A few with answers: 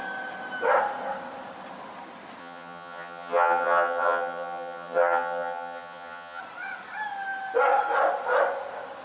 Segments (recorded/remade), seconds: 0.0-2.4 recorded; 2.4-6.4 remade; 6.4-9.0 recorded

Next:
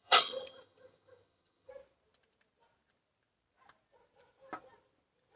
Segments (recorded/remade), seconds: 0.0-1.7 remade; 1.7-5.4 recorded

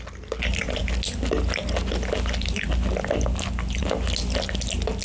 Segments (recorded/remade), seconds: 0.0-5.0 recorded

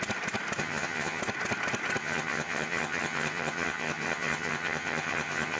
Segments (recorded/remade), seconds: 0.0-0.6 recorded; 0.6-1.2 remade; 1.2-2.0 recorded; 2.0-5.6 remade

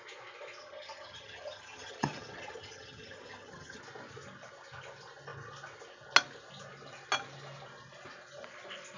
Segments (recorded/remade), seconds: 0.0-0.6 recorded; 0.6-3.8 remade; 3.8-9.0 recorded